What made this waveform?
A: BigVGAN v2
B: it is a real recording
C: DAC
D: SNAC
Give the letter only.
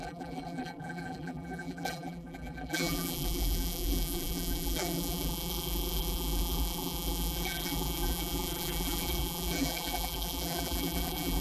A